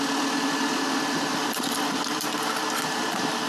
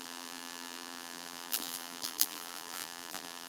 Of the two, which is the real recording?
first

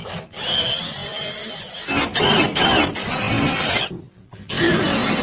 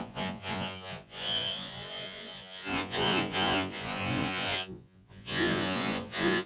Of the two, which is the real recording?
first